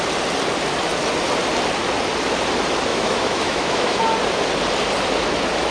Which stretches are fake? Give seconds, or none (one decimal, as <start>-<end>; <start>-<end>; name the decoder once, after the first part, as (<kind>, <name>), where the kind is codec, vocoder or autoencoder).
2.9-4.0 (autoencoder, DAC-VAE)